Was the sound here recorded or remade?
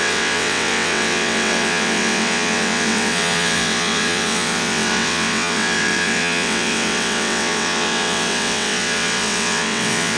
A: remade